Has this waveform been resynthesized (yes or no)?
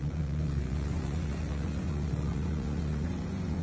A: yes